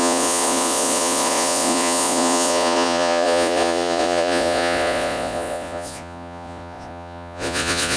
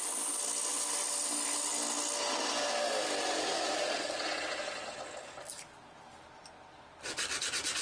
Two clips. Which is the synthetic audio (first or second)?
first